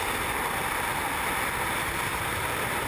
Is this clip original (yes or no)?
yes